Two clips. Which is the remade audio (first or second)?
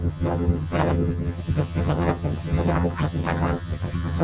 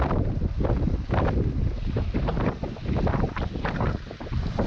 first